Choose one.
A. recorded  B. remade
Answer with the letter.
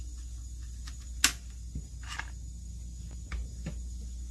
A